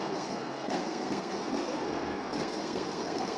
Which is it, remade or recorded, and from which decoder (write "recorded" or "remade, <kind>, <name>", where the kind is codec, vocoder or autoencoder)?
remade, codec, SNAC